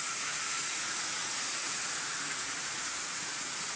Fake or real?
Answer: fake